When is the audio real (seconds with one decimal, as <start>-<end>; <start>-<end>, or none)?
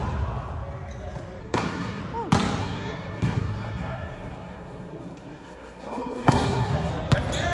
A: 0.0-1.4; 2.0-2.6; 6.9-7.5